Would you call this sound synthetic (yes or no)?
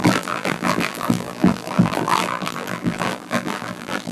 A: yes